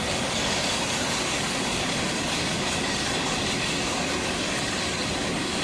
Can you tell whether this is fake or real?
fake